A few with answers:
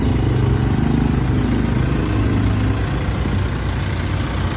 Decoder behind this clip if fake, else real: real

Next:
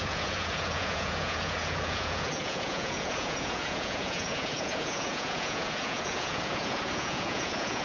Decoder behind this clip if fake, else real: fake, vocoder, Vocos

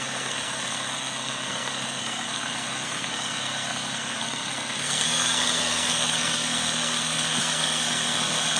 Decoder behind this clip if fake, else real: fake, codec, SNAC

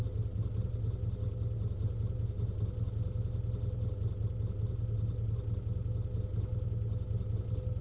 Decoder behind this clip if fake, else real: real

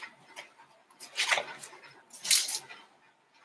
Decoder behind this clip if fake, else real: real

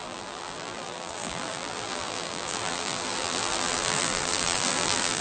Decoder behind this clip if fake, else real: fake, vocoder, BigVGAN v2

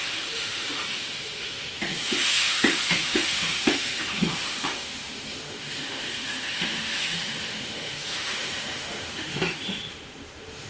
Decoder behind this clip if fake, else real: fake, autoencoder, DAC-VAE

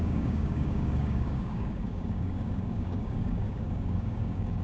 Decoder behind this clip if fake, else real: fake, codec, DAC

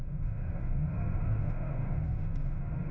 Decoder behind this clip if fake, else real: fake, autoencoder, DAC-VAE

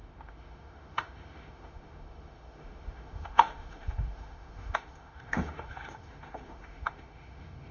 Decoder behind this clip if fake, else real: fake, autoencoder, DAC-VAE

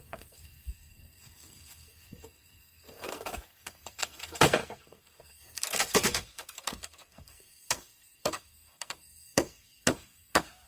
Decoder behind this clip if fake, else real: fake, codec, SNAC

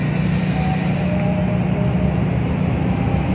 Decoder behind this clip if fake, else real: real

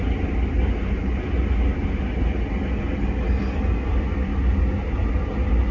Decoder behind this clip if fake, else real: real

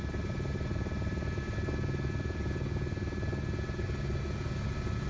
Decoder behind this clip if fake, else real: real